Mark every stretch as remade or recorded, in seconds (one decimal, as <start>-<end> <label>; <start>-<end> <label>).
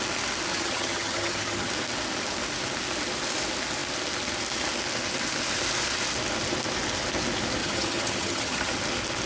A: 0.0-0.5 recorded; 0.5-1.7 remade; 1.7-7.6 recorded; 7.6-8.7 remade; 8.7-9.3 recorded